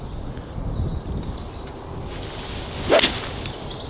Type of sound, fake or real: real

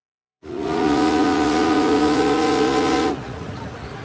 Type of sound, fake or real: fake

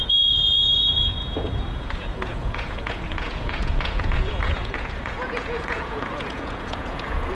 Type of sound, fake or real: fake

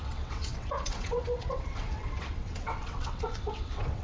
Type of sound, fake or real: fake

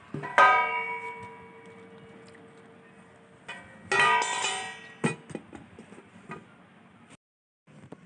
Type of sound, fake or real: real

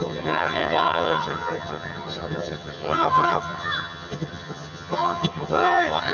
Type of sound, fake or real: fake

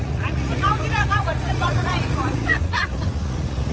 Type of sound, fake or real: fake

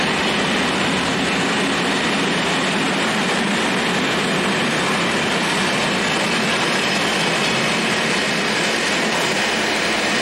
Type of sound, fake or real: real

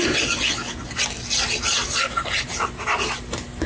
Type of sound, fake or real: real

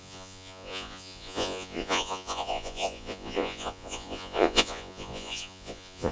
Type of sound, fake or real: fake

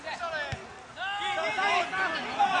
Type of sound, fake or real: real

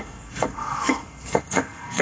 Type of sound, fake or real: fake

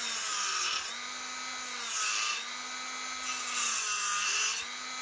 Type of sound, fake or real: real